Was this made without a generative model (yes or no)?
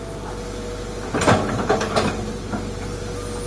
yes